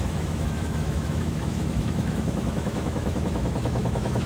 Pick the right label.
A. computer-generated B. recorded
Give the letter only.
A